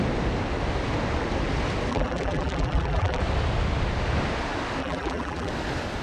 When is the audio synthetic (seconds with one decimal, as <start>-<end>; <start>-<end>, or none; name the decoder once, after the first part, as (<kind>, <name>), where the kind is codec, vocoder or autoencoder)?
1.9-3.2 (vocoder, BigVGAN v2); 4.8-5.5